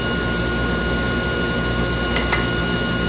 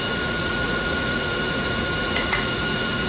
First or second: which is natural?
first